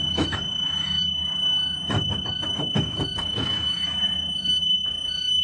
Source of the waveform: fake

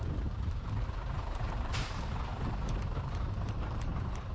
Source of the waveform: fake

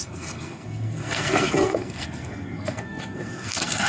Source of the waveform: fake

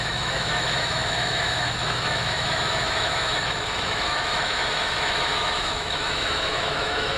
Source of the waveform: fake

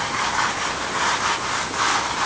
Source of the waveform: real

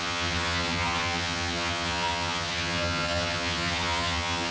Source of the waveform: fake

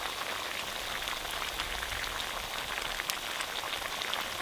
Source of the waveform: real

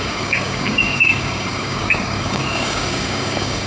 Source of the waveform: fake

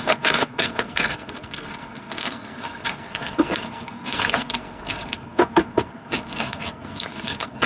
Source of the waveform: fake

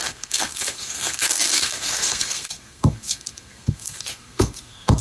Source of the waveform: fake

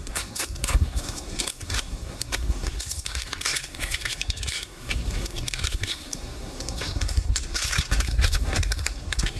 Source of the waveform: fake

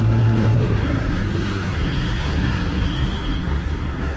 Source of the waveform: fake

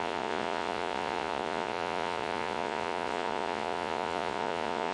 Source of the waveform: fake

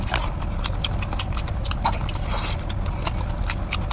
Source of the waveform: real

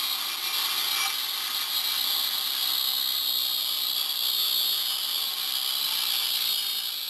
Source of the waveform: real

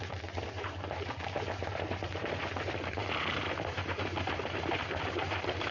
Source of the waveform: fake